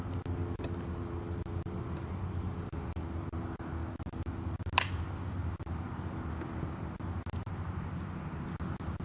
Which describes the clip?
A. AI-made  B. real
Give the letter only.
B